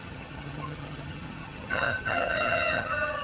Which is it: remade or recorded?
remade